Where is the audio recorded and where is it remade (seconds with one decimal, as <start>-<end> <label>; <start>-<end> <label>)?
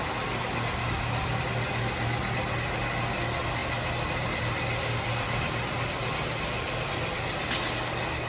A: 0.0-8.3 recorded